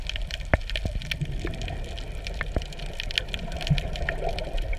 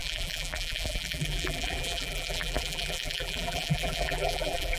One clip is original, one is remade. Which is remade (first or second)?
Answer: second